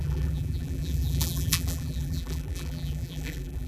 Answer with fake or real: fake